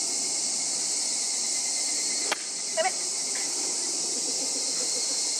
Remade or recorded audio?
recorded